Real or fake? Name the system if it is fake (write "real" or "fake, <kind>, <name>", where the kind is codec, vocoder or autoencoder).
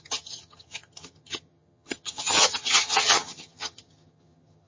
fake, vocoder, HiFi-GAN